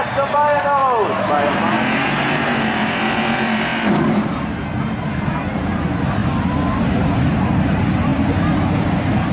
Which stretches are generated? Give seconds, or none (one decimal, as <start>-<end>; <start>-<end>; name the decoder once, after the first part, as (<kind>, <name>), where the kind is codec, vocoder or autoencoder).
0.0-0.8 (vocoder, BigVGAN v2); 1.5-6.2; 6.8-8.1; 8.8-9.3